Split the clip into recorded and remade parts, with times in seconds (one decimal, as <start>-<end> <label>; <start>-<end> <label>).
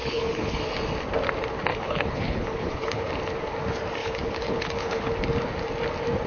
0.0-0.6 remade; 0.6-1.7 recorded; 1.7-3.1 remade; 3.1-4.0 recorded; 4.0-5.1 remade; 5.1-6.3 recorded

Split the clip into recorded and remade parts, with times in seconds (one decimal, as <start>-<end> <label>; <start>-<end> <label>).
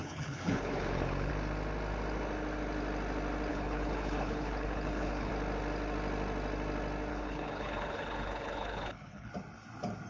0.0-1.3 remade; 1.3-3.5 recorded; 3.5-5.3 remade; 5.3-7.1 recorded; 7.1-9.3 remade; 9.3-10.1 recorded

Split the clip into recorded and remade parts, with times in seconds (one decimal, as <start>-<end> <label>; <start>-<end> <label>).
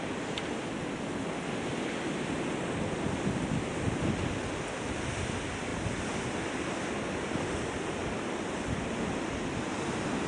0.0-10.3 recorded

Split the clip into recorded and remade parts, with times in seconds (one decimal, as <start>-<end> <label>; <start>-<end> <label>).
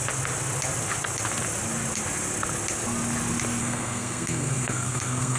0.0-3.6 recorded; 3.6-5.4 remade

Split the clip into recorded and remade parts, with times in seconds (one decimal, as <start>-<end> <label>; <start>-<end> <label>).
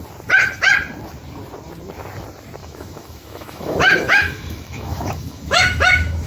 0.0-2.6 recorded; 2.6-6.3 remade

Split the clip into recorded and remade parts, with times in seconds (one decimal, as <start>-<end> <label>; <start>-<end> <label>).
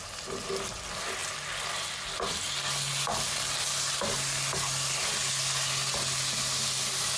0.0-7.2 recorded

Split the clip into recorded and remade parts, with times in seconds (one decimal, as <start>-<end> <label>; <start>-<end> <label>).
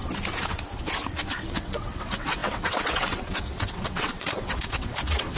0.0-1.5 recorded; 1.5-5.4 remade